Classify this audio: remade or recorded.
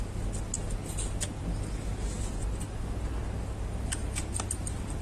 recorded